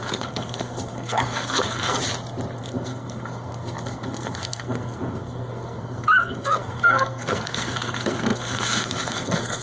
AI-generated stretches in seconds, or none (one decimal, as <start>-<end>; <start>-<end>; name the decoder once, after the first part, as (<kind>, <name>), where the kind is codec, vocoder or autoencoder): 0.0-2.0 (codec, SNAC); 2.6-9.6